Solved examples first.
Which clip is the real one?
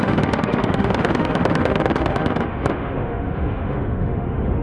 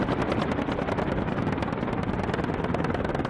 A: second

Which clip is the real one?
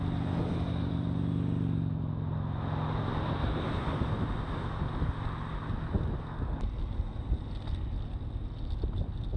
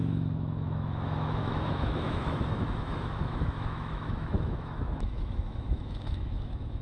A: first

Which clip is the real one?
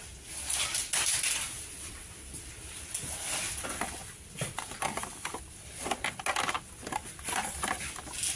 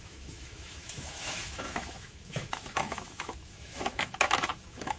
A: first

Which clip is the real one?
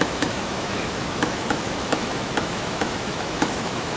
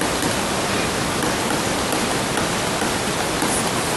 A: second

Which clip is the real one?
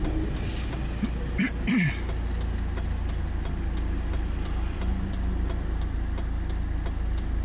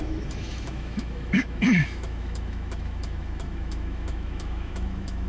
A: first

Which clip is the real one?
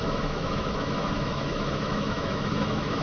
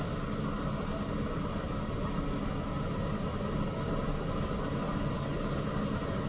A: second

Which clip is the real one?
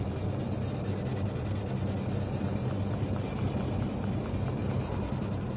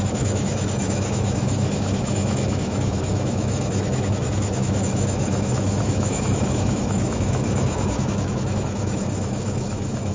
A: first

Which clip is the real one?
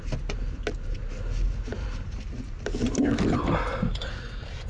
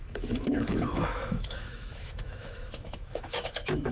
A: first